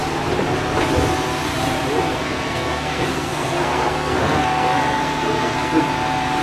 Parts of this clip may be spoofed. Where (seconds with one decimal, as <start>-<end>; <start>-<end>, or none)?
2.1-5.9